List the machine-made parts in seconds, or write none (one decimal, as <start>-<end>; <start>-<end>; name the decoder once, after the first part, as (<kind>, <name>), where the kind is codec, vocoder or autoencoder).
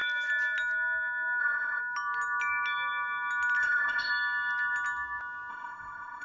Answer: 1.4-1.8 (codec, ZipCodec); 3.6-4.1; 5.5-6.2